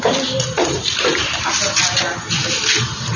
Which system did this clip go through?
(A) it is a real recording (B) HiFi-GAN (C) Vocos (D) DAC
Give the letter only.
A